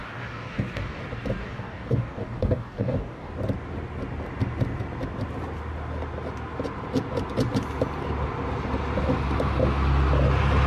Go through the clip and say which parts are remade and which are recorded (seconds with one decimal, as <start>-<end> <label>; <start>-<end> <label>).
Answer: 0.0-1.0 remade; 1.0-1.4 recorded; 1.4-3.3 remade; 3.3-10.7 recorded